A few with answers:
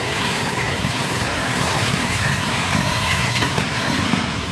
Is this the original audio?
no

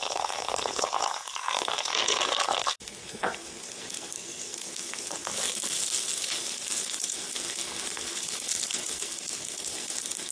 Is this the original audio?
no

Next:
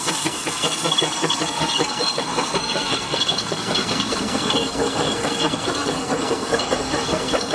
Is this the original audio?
no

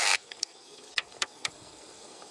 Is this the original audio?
no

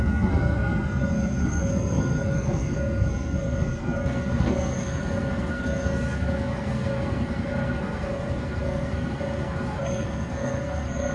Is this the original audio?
no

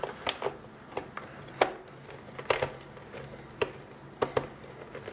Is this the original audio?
yes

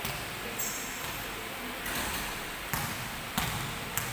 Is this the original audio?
yes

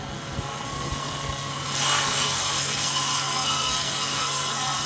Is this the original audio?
no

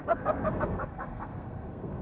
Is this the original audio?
no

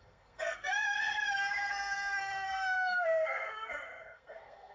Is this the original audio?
no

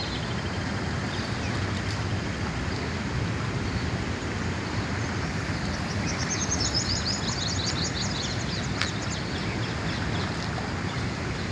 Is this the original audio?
yes